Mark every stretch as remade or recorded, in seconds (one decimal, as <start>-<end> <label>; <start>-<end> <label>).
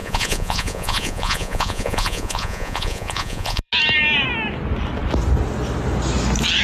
0.0-3.7 remade; 3.7-6.6 recorded